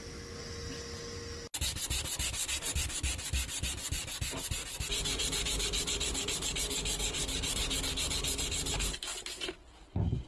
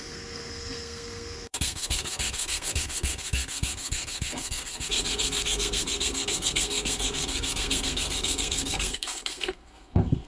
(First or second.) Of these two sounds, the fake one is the second